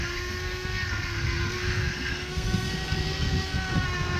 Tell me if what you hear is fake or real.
fake